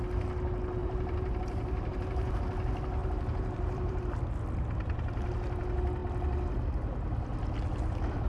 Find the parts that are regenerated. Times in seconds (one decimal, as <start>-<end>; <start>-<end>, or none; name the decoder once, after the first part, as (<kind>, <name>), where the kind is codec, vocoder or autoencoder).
0.8-2.4 (vocoder, BigVGAN v2); 3.0-4.0